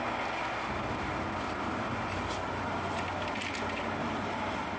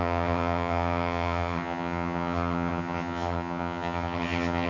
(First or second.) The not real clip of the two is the second